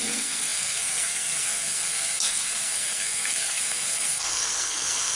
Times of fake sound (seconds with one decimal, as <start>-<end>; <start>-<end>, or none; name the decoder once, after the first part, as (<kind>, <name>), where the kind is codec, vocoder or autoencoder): 0.0-5.2 (codec, SNAC)